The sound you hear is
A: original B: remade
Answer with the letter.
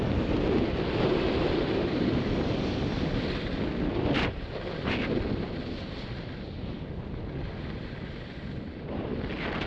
A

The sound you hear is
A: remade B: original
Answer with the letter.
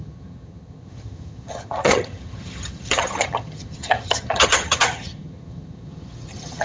A